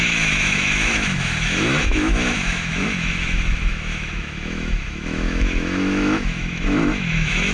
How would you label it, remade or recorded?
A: remade